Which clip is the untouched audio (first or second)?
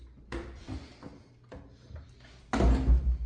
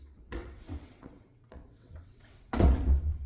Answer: first